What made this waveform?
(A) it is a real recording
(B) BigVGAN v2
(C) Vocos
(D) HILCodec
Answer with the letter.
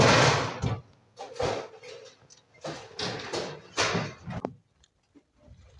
A